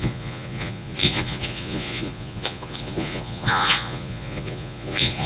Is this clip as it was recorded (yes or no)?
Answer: no